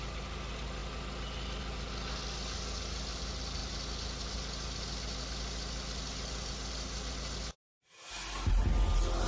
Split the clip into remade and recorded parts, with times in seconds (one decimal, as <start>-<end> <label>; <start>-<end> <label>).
0.0-9.3 recorded